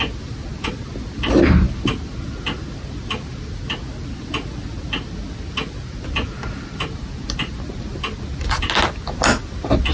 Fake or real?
real